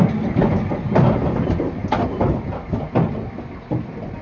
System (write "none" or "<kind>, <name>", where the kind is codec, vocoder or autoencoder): none